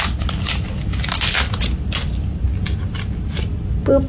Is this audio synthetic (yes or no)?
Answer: no